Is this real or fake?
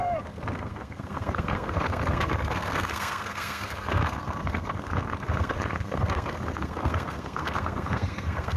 fake